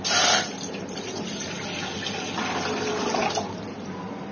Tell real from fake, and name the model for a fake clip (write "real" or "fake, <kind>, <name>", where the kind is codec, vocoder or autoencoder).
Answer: real